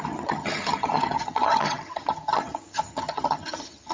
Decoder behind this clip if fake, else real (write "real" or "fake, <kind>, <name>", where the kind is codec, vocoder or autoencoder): fake, vocoder, HiFi-GAN